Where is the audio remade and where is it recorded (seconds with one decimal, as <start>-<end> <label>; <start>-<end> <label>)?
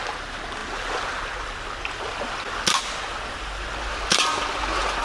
0.0-5.0 recorded